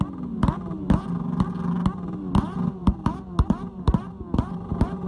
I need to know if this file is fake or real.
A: real